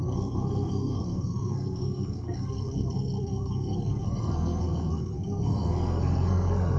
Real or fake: fake